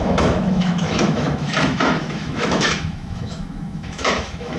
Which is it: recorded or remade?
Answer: remade